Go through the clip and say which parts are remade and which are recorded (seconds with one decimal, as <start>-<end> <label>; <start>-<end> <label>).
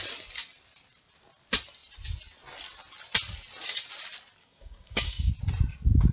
0.0-4.4 recorded; 4.4-5.3 remade; 5.3-6.1 recorded